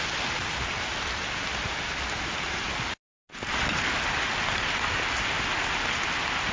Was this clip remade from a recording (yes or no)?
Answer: no